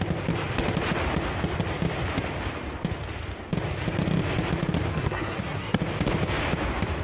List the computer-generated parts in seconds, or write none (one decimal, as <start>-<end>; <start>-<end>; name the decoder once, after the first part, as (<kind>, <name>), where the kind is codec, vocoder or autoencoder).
4.9-5.8 (codec, SNAC)